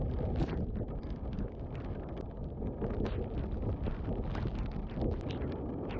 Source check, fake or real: real